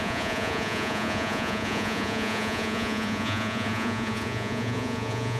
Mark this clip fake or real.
fake